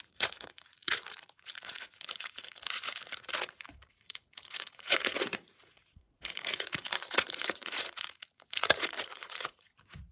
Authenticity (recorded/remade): remade